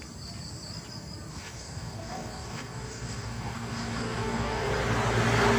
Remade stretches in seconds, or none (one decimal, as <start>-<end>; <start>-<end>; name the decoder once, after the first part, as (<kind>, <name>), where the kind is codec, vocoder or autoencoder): 1.3-4.7 (codec, DAC)